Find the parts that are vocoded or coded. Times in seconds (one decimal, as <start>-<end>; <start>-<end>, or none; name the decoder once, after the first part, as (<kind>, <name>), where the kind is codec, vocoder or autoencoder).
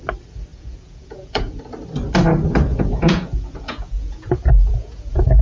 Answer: 0.5-1.6 (vocoder, Vocos); 2.7-5.4